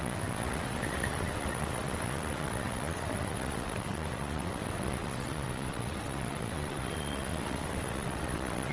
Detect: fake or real fake